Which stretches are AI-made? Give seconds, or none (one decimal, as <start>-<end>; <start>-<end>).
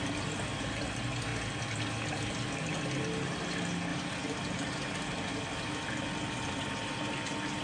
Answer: 3.9-4.9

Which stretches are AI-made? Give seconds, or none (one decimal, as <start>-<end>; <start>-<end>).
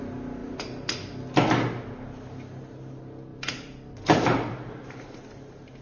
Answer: 3.3-5.0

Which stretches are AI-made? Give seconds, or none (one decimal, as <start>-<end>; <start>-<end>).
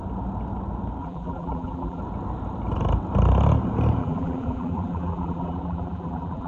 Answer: 1.0-2.0; 4.0-6.5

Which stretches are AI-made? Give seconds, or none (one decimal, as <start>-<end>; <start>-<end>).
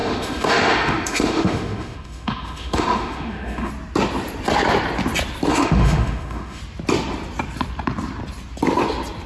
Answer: 0.0-3.7; 5.5-6.6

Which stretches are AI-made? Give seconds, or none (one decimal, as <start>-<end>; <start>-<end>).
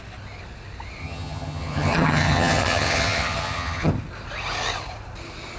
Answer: 1.0-3.9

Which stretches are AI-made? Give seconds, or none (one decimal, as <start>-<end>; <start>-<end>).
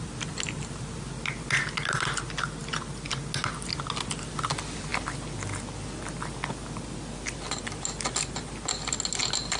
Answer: none